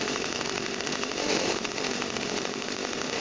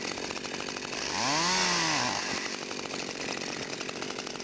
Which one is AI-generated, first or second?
first